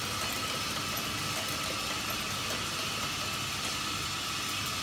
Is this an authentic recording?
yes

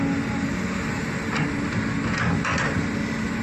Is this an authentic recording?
yes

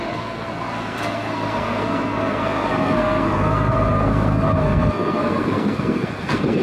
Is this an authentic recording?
no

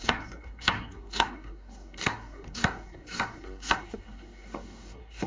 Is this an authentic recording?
no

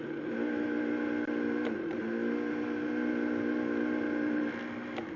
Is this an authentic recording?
yes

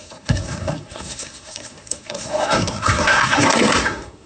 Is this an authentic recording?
no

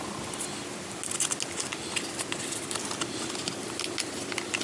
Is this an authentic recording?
yes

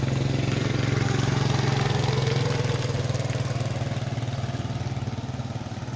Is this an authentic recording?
yes